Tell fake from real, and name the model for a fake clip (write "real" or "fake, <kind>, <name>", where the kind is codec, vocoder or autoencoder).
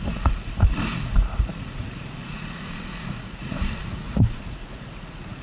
fake, vocoder, Vocos